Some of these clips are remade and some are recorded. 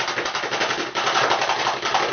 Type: recorded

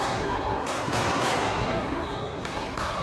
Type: remade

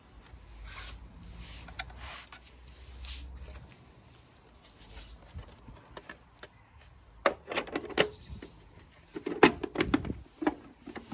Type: recorded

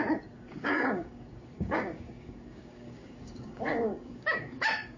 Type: remade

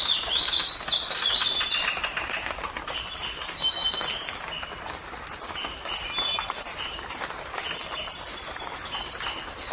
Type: recorded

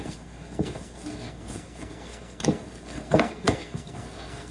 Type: remade